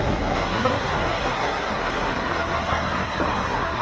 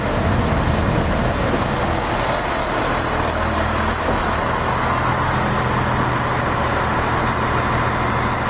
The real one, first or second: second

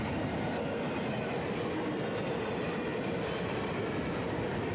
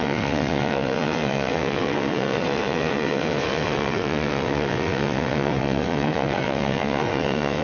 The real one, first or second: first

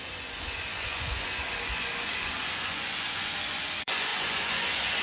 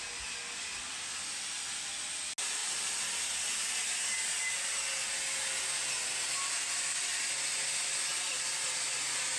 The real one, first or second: second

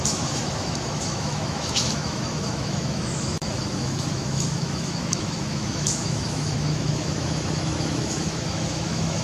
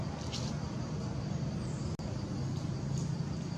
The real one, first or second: second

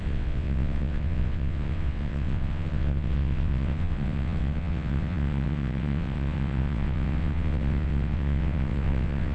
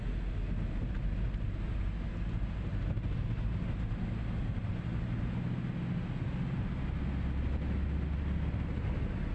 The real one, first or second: second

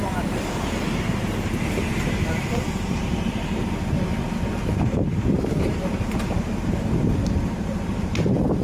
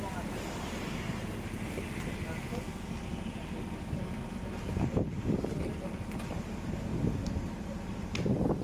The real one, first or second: second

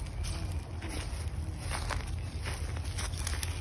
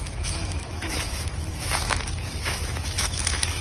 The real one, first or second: first